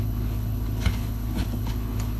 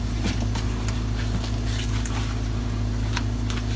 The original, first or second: second